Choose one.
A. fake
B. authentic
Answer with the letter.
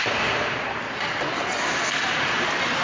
B